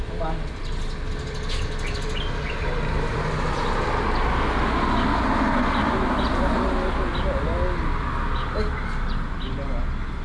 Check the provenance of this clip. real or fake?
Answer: real